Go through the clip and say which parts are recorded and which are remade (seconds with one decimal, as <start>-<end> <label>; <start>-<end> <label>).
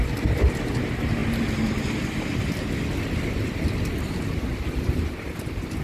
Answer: 0.0-5.8 recorded